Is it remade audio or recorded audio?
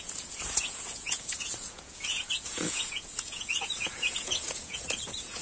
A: remade